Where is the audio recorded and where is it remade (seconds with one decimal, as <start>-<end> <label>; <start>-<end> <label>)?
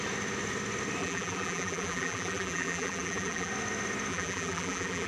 0.0-1.0 recorded; 1.0-3.5 remade; 3.5-4.1 recorded; 4.1-5.1 remade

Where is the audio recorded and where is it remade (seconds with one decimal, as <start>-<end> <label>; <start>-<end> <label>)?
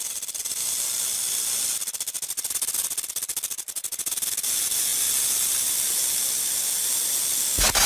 0.0-7.9 recorded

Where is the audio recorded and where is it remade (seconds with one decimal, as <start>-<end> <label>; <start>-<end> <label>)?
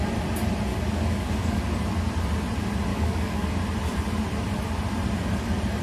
0.0-0.7 recorded; 0.7-1.6 remade; 1.6-2.9 recorded; 2.9-3.5 remade; 3.5-5.8 recorded